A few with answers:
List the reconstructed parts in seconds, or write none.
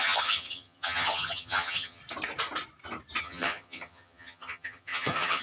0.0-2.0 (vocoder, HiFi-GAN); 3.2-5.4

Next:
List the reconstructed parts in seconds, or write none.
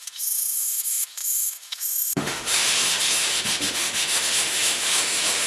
0.0-5.5 (autoencoder, DAC-VAE)